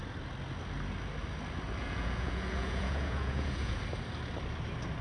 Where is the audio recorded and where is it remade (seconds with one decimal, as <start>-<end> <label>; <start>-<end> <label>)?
0.0-1.8 recorded; 1.8-3.8 remade; 3.8-5.0 recorded